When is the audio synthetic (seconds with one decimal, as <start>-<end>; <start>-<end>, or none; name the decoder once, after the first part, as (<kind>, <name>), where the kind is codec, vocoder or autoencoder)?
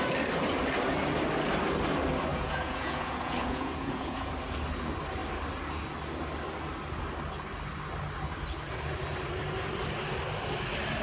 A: 2.3-4.3 (vocoder, Vocos)